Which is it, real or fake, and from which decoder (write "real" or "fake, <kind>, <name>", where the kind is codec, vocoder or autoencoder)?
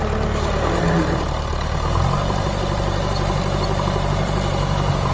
fake, vocoder, BigVGAN v2